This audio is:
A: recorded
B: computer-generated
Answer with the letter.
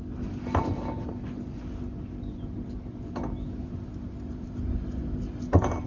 A